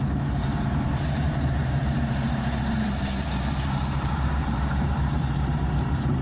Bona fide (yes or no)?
no